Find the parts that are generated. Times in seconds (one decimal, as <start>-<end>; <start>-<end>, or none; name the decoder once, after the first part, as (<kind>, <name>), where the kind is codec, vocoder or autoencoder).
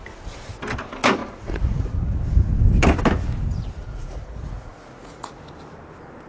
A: 1.2-2.2 (vocoder, Vocos); 3.8-5.4